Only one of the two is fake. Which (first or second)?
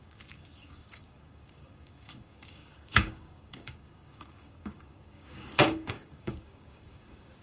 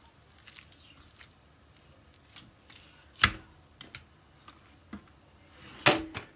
first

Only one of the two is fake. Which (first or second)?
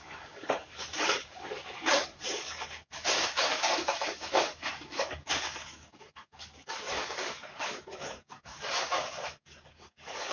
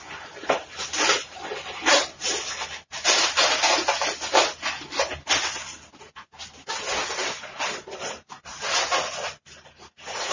first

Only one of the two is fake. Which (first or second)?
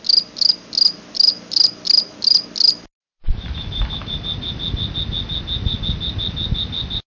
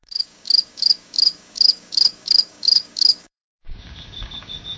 second